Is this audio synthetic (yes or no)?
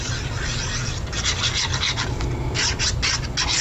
no